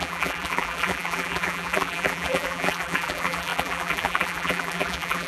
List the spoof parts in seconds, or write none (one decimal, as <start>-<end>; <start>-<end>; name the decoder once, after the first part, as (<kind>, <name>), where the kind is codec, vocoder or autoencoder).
0.0-5.3 (vocoder, BigVGAN v2)